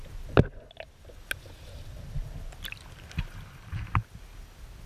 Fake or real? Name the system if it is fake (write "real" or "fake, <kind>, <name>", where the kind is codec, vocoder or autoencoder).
real